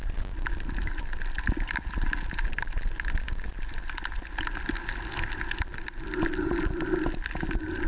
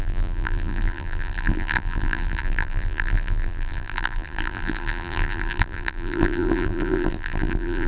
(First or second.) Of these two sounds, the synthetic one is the second